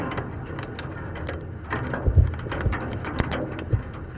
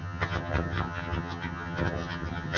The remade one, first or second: second